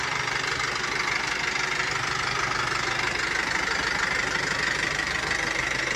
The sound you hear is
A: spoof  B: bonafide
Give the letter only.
B